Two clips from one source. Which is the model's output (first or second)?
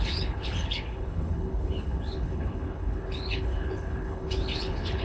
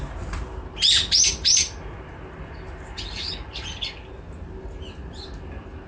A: first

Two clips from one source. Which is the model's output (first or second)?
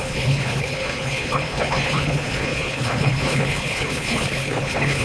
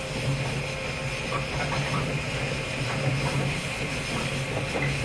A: first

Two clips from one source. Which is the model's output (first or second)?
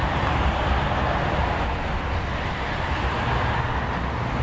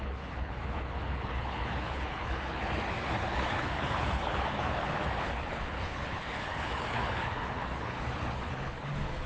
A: second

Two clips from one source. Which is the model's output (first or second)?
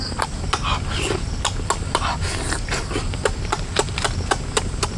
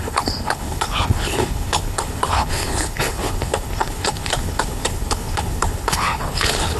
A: second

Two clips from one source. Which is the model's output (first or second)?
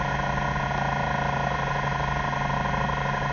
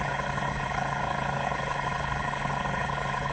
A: second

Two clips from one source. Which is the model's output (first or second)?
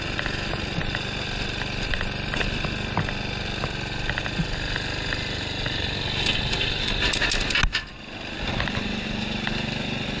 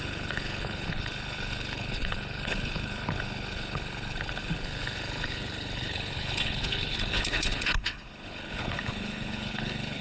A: second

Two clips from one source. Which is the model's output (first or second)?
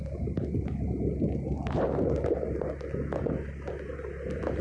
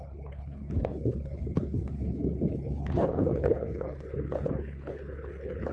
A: second